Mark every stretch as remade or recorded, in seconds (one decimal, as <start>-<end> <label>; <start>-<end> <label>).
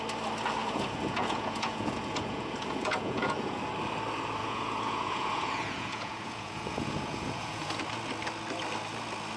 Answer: 0.0-0.6 recorded; 0.6-3.6 remade; 3.6-4.4 recorded; 4.4-7.8 remade; 7.8-9.4 recorded